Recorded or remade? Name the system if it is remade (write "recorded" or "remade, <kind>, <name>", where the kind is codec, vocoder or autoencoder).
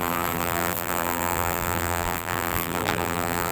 remade, vocoder, BigVGAN v2